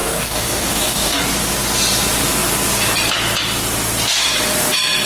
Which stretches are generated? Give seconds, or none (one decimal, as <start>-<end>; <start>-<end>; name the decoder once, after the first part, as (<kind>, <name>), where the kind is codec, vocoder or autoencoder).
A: 0.0-1.2 (codec, DAC)